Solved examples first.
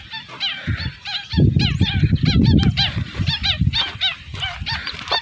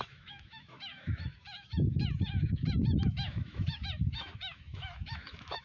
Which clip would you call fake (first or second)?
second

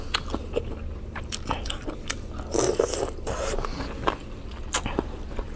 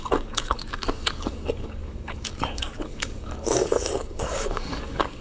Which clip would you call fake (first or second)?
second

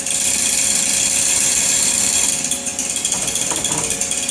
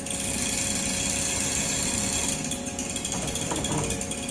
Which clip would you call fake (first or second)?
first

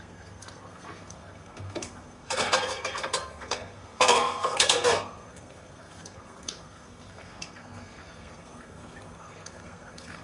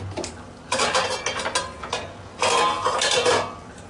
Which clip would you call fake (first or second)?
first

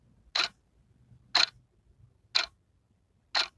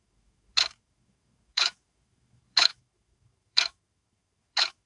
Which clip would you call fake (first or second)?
second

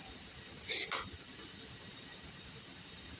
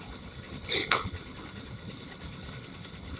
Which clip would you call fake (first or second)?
second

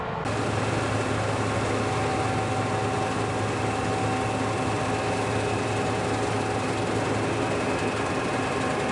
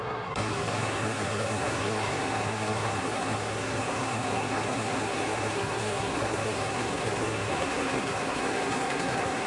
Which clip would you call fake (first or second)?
second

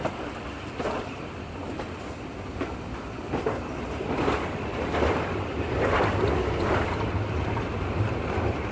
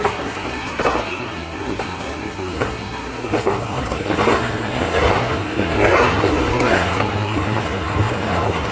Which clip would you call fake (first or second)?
second